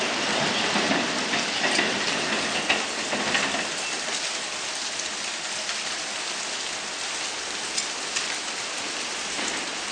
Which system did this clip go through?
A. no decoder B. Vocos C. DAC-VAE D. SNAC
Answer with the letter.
A